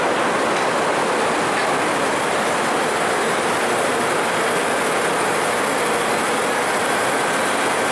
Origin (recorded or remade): recorded